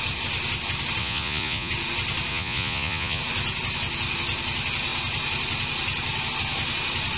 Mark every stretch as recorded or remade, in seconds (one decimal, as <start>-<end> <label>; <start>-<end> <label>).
0.0-1.0 recorded; 1.0-1.7 remade; 1.7-2.3 recorded; 2.3-3.2 remade; 3.2-7.2 recorded